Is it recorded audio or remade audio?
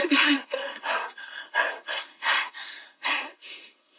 remade